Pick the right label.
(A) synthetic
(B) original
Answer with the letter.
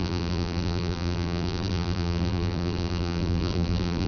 A